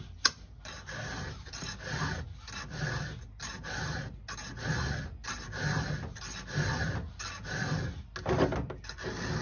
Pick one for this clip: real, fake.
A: real